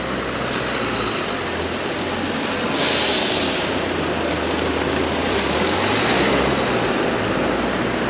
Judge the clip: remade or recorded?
recorded